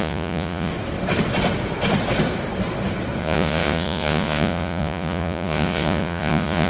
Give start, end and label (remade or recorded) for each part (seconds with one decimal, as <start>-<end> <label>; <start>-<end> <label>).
0.0-0.7 remade; 0.7-3.2 recorded; 3.2-6.7 remade